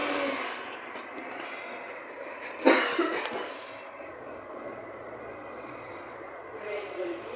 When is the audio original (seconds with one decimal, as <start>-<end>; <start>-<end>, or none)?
0.0-3.9